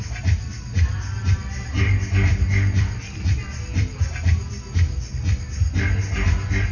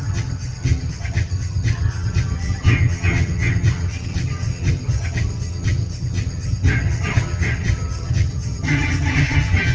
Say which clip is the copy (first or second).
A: second